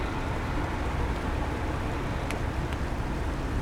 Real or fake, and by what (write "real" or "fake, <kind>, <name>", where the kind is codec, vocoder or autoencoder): fake, vocoder, BigVGAN v2